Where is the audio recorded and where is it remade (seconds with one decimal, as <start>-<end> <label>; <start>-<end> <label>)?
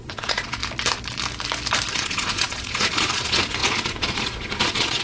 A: 0.0-0.6 remade; 0.6-1.9 recorded; 1.9-5.0 remade